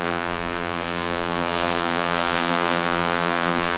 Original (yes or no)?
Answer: no